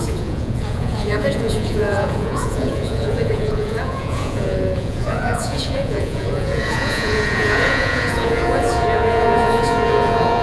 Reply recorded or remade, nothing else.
remade